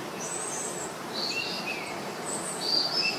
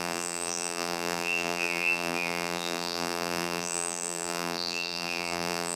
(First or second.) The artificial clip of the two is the second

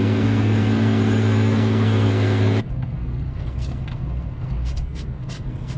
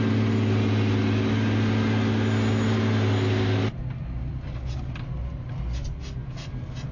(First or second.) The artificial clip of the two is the first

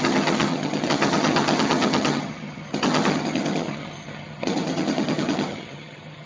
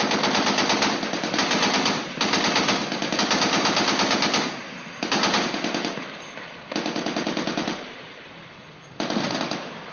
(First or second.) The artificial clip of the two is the first